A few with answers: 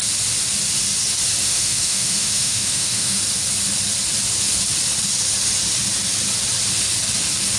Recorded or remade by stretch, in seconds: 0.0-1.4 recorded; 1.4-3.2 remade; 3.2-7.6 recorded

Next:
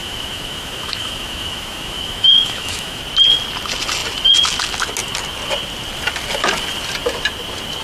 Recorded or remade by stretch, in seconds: 0.0-3.0 remade; 3.0-7.8 recorded

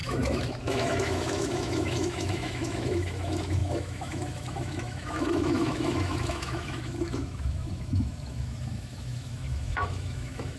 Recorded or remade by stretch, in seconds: 0.0-10.6 remade

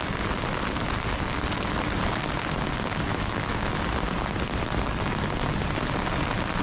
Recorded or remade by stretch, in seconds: 0.0-3.1 recorded; 3.1-3.8 remade; 3.8-6.6 recorded